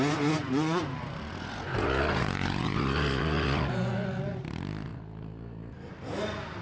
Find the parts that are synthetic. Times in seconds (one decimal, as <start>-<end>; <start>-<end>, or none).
0.4-4.4